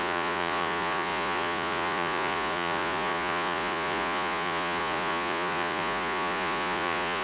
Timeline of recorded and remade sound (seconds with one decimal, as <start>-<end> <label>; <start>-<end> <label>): 0.0-7.2 remade